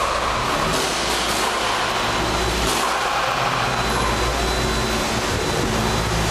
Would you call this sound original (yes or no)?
yes